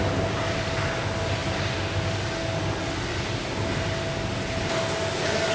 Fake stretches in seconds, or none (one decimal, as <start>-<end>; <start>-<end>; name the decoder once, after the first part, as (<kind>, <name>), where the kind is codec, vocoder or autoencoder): none